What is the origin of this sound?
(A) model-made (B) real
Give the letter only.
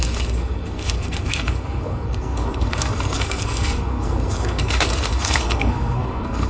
A